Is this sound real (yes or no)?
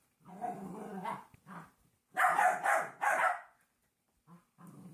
yes